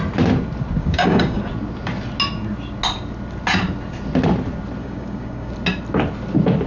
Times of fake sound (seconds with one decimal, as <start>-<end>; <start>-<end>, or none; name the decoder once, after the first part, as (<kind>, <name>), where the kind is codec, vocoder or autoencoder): 0.8-1.4 (codec, DAC); 4.8-5.5